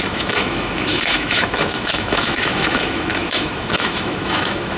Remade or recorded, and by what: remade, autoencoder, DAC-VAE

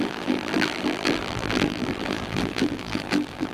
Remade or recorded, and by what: remade, vocoder, BigVGAN v2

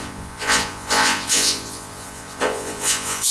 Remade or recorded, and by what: remade, vocoder, Vocos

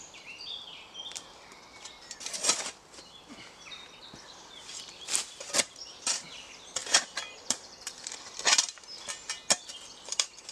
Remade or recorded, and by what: remade, vocoder, BigVGAN v2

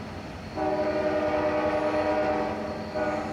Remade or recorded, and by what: recorded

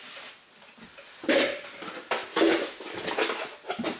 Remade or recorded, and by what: recorded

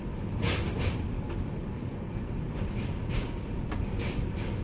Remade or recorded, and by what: remade, vocoder, BigVGAN v2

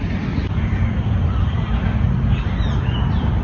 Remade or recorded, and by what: remade, vocoder, BigVGAN v2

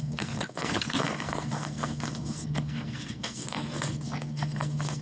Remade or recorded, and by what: remade, codec, SNAC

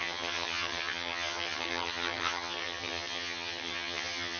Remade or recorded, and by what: remade, vocoder, HiFi-GAN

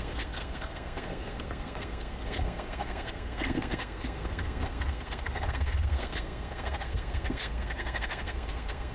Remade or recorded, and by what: remade, codec, SNAC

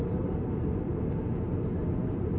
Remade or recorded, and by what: recorded